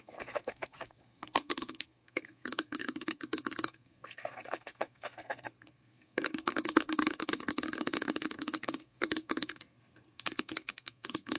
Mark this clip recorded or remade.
remade